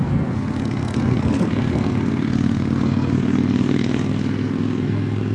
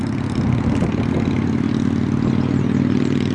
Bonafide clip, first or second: second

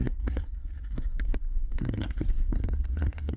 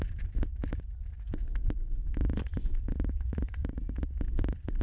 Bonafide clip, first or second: second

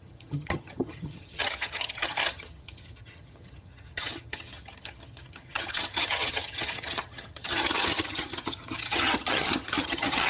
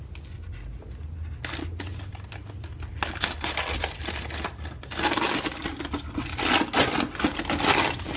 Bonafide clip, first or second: second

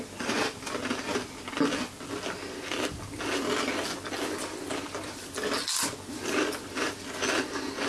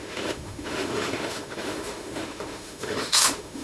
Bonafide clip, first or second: first